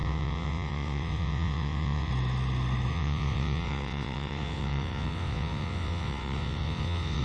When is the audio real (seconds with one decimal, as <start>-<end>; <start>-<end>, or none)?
2.1-2.9